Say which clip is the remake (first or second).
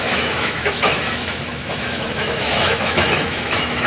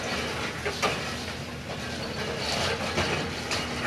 first